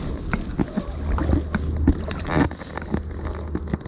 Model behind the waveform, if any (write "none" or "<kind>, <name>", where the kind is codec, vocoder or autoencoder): none